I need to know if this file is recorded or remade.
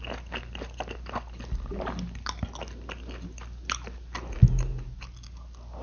recorded